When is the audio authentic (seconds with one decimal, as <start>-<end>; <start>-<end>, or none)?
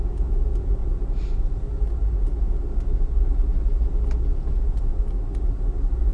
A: 0.8-4.3; 4.9-6.1